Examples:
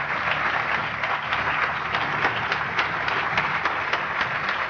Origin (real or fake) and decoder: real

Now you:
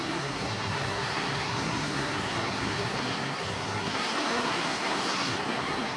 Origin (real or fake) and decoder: fake, codec, SNAC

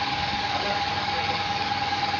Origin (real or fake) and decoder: fake, codec, DAC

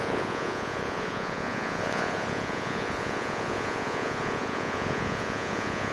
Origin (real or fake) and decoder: fake, vocoder, Vocos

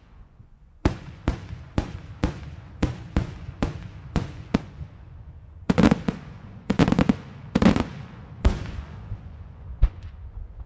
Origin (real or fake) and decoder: fake, vocoder, Vocos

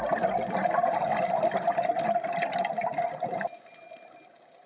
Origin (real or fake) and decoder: real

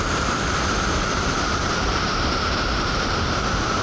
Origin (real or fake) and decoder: fake, vocoder, BigVGAN v2